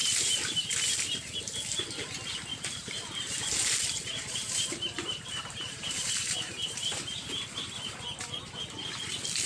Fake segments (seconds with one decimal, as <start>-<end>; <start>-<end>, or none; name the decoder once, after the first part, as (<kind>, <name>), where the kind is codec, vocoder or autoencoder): 0.0-1.4 (vocoder, BigVGAN v2); 2.5-7.3